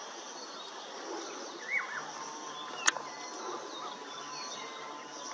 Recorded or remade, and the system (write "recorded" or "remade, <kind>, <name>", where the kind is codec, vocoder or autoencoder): recorded